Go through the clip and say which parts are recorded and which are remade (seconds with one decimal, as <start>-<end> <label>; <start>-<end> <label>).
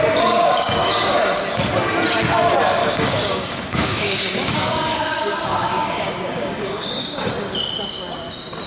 0.0-0.4 recorded; 0.4-1.2 remade; 1.2-2.8 recorded; 2.8-7.3 remade; 7.3-8.7 recorded